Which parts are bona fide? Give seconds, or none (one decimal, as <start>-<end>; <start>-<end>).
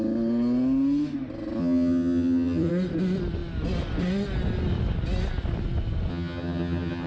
0.0-1.6; 2.7-6.1